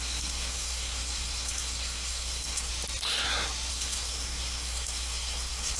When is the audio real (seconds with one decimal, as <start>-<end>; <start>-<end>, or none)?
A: 2.7-3.7